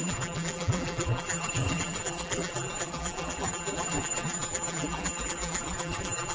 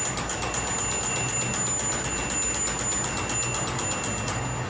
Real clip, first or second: second